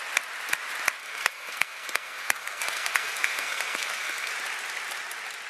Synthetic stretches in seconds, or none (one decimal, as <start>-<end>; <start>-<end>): 1.0-4.3